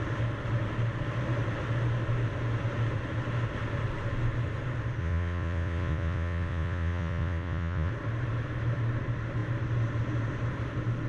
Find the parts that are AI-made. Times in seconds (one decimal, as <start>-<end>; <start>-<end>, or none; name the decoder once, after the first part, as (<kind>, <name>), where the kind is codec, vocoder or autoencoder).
5.0-7.9 (vocoder, Vocos)